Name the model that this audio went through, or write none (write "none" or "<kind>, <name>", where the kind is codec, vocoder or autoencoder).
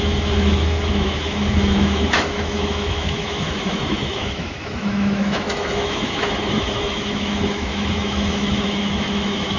autoencoder, DAC-VAE